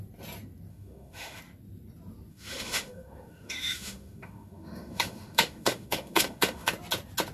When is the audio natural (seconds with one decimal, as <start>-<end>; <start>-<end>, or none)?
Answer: 0.0-0.7; 1.4-2.3; 6.7-7.3